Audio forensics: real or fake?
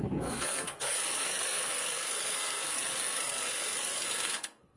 fake